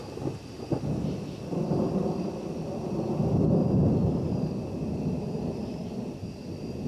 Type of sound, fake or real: real